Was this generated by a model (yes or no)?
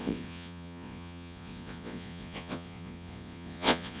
yes